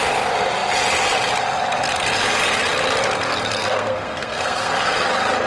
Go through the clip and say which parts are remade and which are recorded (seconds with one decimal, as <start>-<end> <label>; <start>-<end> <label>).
0.0-3.6 recorded; 3.6-4.7 remade; 4.7-5.5 recorded